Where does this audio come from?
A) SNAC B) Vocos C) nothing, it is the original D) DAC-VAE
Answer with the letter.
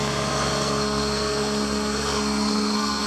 A